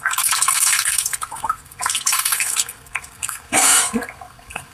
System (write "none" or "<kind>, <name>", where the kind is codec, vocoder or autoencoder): codec, SNAC